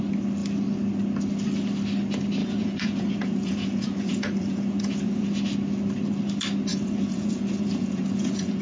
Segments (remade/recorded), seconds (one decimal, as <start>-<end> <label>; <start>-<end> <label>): 0.0-2.4 recorded; 2.4-5.3 remade; 5.3-6.7 recorded; 6.7-8.6 remade